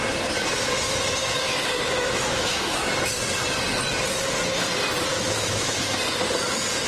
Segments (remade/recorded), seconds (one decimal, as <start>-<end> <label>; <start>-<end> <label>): 0.0-1.2 recorded; 1.2-3.1 remade; 3.1-5.1 recorded; 5.1-5.8 remade; 5.8-6.9 recorded